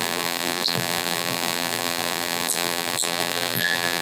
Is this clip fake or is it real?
fake